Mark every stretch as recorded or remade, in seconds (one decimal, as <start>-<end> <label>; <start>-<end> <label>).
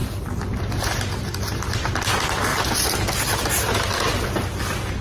0.0-0.6 remade; 0.6-2.5 recorded; 2.5-3.9 remade; 3.9-5.0 recorded